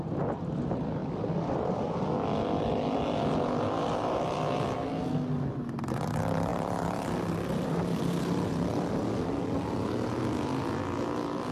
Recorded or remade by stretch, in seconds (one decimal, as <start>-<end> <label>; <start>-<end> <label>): 0.0-11.5 recorded